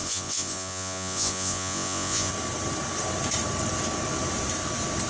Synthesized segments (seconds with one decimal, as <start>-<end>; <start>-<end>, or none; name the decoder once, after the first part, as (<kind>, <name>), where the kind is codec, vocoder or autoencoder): 0.0-2.3 (vocoder, Vocos)